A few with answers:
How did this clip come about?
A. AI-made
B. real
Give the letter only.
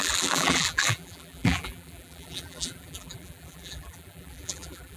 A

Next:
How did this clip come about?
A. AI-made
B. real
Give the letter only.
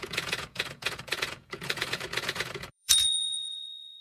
A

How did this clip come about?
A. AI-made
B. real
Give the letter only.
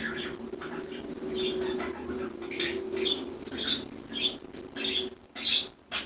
B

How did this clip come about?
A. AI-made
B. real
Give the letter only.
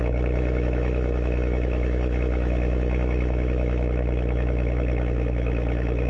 A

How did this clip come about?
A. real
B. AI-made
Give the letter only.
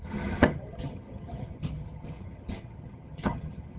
B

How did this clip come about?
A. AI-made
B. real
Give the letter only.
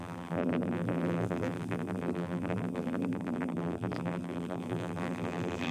A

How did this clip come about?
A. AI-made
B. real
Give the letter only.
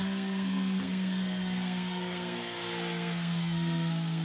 A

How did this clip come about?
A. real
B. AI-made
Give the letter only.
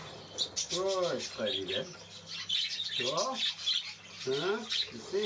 A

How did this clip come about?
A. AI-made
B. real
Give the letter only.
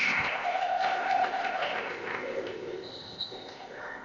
A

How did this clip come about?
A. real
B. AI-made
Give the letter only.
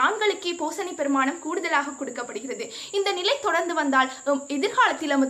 A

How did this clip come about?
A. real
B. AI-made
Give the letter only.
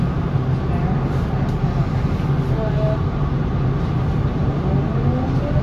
A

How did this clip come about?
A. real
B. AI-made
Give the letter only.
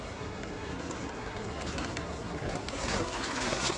B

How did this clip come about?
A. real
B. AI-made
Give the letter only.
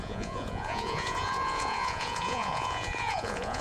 B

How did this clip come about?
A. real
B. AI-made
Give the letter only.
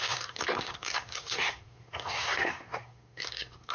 B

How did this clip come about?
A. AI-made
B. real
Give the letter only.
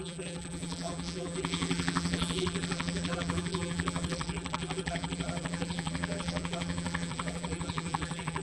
A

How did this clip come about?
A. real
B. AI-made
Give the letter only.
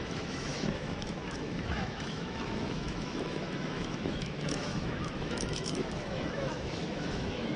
B